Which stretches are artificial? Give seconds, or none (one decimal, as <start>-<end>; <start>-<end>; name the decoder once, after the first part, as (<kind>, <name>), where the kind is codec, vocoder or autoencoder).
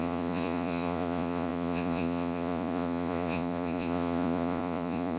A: 0.0-5.2 (vocoder, Vocos)